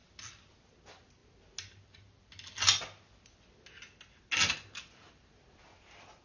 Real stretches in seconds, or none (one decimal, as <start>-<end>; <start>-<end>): 0.0-6.2